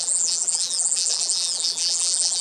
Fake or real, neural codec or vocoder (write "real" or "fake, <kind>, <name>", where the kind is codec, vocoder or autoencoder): fake, vocoder, BigVGAN v2